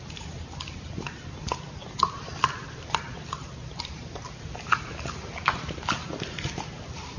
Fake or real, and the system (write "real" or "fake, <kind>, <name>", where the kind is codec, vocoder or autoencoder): real